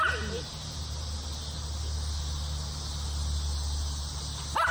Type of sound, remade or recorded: recorded